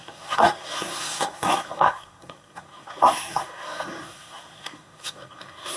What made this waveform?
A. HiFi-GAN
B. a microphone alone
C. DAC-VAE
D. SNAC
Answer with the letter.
D